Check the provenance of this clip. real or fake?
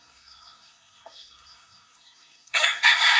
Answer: fake